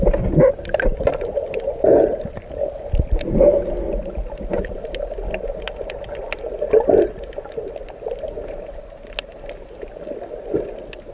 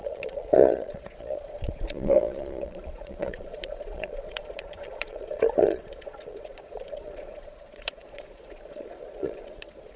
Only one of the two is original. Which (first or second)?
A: first